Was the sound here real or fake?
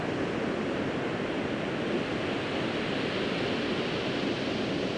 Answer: real